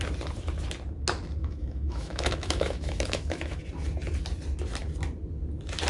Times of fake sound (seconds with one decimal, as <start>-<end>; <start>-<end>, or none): 1.4-3.6